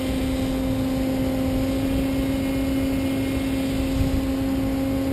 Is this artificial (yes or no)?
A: no